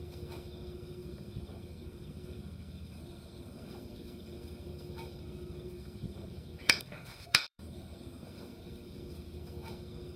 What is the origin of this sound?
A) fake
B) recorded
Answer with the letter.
A